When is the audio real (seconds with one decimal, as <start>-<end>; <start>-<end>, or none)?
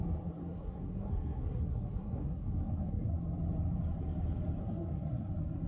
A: 0.0-0.4; 3.2-4.6; 5.3-5.7